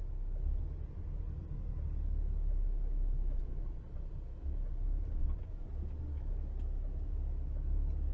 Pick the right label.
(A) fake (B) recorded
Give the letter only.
B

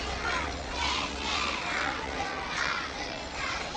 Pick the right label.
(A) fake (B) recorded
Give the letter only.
A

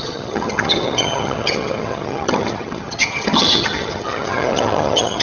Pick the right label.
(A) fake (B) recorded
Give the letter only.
A